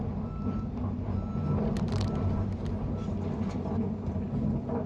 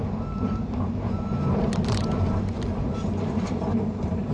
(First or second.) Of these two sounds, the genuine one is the first